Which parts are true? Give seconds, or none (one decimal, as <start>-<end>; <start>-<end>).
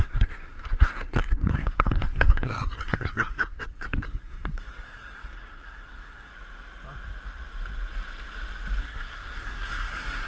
6.3-8.8